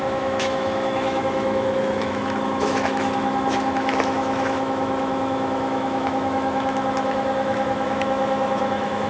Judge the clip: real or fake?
fake